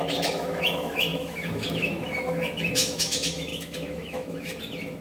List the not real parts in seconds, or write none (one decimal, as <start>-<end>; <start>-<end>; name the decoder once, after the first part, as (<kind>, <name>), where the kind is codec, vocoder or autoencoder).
0.0-5.0 (autoencoder, DAC-VAE)